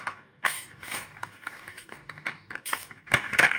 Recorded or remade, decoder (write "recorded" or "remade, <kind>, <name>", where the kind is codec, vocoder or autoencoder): remade, codec, DAC